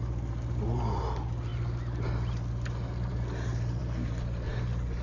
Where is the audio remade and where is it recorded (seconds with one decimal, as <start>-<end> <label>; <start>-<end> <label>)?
0.0-5.0 recorded